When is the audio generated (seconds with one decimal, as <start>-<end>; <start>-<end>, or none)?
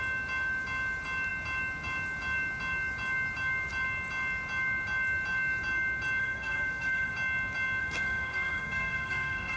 6.2-7.1; 7.8-9.6